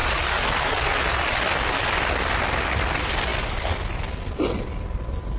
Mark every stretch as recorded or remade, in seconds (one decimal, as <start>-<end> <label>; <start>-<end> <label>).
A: 0.0-5.4 recorded